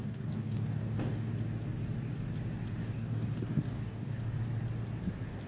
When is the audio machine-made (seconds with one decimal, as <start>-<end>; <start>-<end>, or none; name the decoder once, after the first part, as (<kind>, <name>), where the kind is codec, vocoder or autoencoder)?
0.0-1.3 (codec, DAC); 2.8-4.2